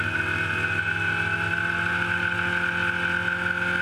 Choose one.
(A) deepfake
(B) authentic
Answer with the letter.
B